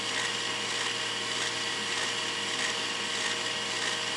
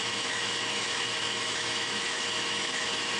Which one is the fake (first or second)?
second